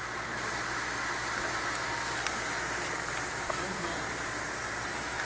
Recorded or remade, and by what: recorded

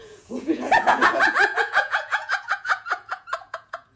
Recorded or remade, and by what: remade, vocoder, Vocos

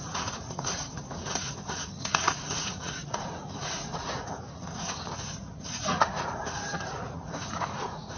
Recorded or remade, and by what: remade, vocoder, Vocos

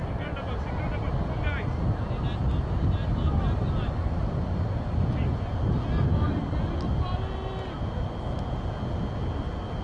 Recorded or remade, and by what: recorded